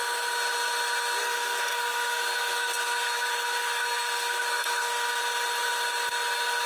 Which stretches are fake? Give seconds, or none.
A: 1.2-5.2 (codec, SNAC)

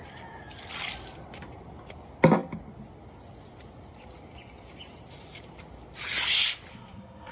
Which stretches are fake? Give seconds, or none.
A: 6.7-7.3 (codec, SNAC)

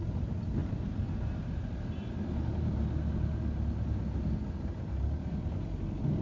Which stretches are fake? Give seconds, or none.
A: none

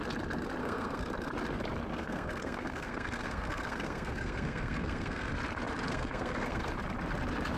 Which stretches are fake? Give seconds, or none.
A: 0.6-1.1 (codec, SNAC); 1.9-5.3; 5.9-6.7

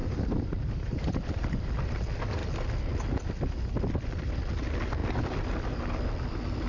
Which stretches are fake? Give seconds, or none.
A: 0.0-1.7 (vocoder, BigVGAN v2)